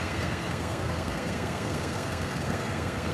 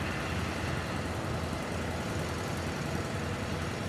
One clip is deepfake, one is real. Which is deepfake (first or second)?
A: first